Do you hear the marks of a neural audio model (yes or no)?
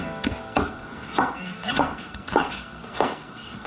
yes